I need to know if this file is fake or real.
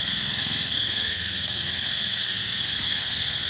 fake